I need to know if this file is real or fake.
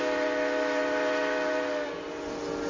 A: real